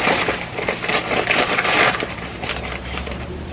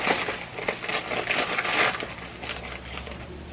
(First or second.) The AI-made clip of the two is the first